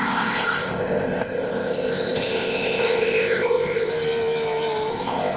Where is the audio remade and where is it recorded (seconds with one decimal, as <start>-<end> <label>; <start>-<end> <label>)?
0.0-3.9 remade; 3.9-4.9 recorded; 4.9-5.4 remade